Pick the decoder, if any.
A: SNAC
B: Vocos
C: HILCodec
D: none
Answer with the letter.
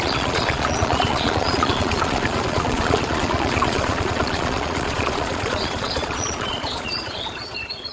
B